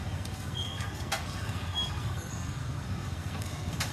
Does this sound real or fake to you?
fake